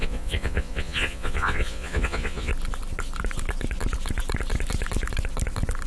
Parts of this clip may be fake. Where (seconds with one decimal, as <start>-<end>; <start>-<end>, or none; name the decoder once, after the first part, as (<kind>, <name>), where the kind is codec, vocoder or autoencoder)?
0.0-2.5 (vocoder, Vocos)